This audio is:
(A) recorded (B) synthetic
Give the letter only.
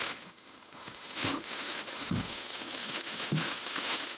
B